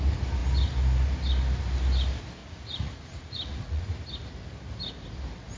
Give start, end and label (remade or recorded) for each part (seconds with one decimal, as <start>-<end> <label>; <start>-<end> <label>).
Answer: 0.0-2.4 recorded; 2.4-3.8 remade; 3.8-5.6 recorded